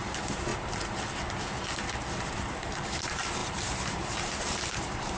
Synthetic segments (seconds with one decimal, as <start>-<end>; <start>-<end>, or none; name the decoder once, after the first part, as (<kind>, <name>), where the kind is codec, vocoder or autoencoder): 0.0-0.5 (vocoder, BigVGAN v2); 2.2-5.2